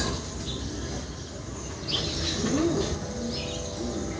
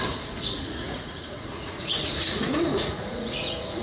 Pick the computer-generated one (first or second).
second